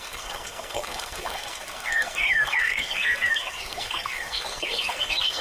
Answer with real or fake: fake